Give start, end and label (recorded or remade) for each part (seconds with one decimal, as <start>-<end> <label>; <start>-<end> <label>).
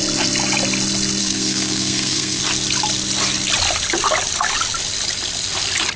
0.0-1.2 recorded; 1.2-2.4 remade; 2.4-6.0 recorded